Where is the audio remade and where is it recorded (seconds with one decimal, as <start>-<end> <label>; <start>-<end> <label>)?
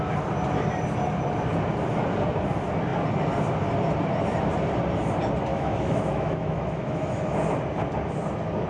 0.0-5.5 recorded; 5.5-7.1 remade; 7.1-8.7 recorded